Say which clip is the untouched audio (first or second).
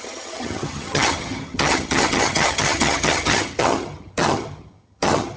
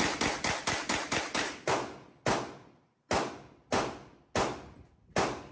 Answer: second